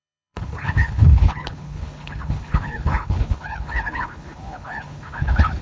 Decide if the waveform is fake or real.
fake